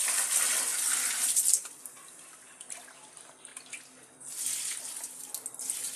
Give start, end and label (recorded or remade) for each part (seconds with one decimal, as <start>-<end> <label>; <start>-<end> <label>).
0.0-6.0 recorded